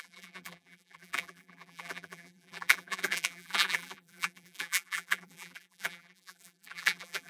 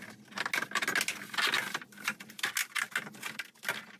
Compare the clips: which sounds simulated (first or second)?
first